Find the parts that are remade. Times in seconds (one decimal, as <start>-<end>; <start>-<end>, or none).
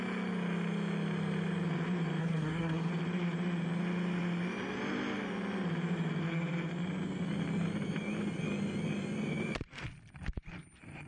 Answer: 2.2-2.9